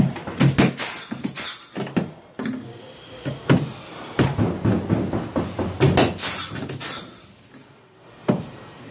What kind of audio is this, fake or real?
real